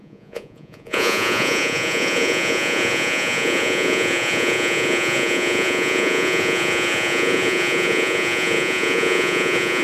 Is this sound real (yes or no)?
no